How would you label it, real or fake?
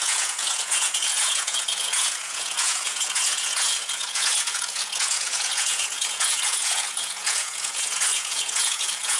fake